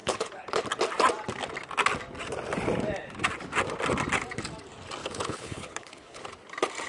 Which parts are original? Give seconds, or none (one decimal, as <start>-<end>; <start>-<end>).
0.6-5.0; 6.2-6.9